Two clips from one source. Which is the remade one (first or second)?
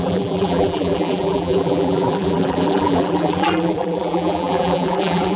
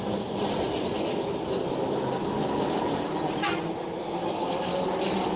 first